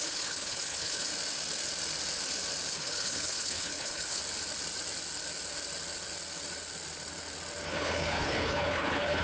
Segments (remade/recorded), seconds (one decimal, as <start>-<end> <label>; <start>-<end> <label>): 0.0-1.1 remade; 1.1-2.7 recorded; 2.7-4.2 remade; 4.2-7.7 recorded; 7.7-9.2 remade